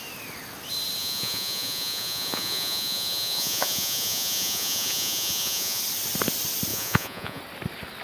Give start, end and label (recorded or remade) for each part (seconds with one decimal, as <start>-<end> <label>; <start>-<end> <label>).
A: 0.0-1.0 recorded; 1.0-5.8 remade; 5.8-6.7 recorded; 6.7-7.4 remade; 7.4-8.0 recorded